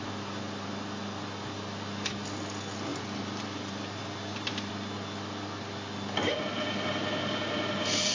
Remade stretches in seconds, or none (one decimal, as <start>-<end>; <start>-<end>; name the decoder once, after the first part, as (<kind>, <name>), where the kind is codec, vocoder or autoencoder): 2.9-4.7 (vocoder, BigVGAN v2)